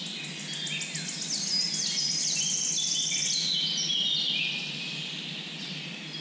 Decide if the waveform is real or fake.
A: real